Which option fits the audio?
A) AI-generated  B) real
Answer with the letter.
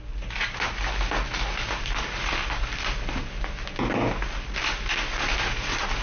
B